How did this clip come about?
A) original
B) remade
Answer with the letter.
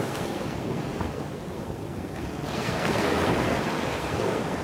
B